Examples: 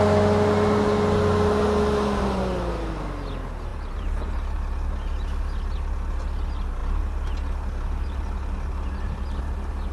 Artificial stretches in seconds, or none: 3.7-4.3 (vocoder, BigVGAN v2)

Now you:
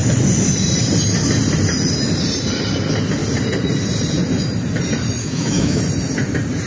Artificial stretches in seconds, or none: 5.2-5.8 (autoencoder, DAC-VAE)

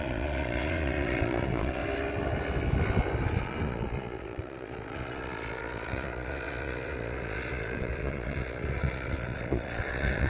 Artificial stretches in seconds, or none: 0.0-1.8 (vocoder, Vocos); 3.4-10.3

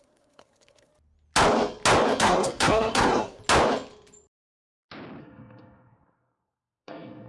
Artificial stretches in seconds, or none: 0.0-0.9 (codec, SNAC); 2.2-3.4; 5.2-7.3

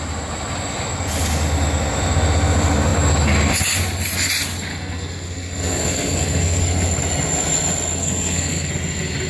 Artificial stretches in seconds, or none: 4.7-6.6 (codec, SNAC); 8.0-8.7

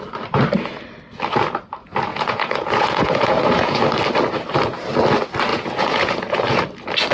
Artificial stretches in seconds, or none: 2.1-3.8 (vocoder, Vocos); 5.5-6.6